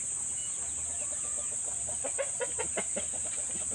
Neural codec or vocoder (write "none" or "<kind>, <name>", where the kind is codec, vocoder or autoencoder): none